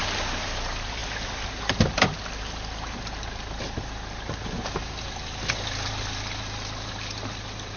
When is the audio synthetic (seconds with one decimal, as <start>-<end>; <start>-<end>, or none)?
none